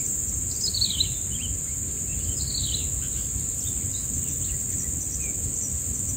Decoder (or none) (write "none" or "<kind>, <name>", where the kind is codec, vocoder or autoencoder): none